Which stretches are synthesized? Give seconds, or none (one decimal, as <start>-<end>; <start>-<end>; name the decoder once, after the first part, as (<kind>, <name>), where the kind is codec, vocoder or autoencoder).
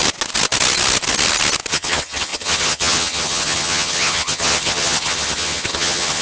1.7-6.2 (vocoder, HiFi-GAN)